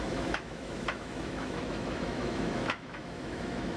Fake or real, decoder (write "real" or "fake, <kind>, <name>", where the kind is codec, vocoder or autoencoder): fake, autoencoder, DAC-VAE